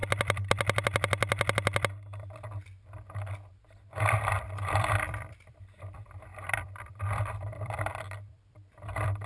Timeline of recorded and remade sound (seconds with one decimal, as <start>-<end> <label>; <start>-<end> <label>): 0.0-4.3 recorded; 4.3-9.3 remade